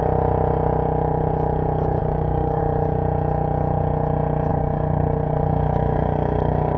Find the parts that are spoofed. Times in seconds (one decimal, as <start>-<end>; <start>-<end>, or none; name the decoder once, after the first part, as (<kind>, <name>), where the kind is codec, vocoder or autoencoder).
2.0-2.6 (codec, DAC); 4.5-6.8